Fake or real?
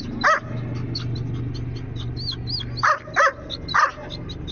real